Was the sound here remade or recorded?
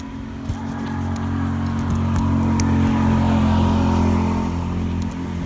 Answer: recorded